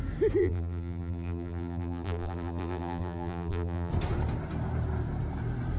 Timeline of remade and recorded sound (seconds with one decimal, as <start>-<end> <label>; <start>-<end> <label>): 0.0-0.4 recorded; 0.4-3.9 remade; 3.9-5.8 recorded

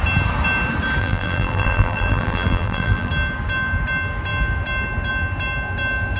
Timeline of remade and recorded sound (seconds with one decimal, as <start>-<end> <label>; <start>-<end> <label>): 0.0-1.0 recorded; 1.0-3.1 remade; 3.1-6.2 recorded

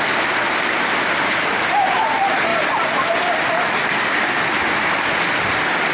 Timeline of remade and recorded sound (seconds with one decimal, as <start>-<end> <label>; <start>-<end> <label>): 0.0-2.5 remade; 2.5-5.2 recorded; 5.2-5.9 remade

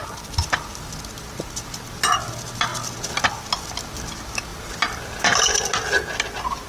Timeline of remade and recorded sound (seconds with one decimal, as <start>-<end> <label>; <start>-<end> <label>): 0.0-4.5 recorded; 4.5-5.0 remade; 5.0-6.7 recorded